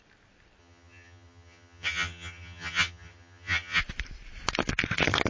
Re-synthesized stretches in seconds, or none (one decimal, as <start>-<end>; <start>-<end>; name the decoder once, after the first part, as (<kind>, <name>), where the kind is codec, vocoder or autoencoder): 0.6-3.8 (vocoder, HiFi-GAN)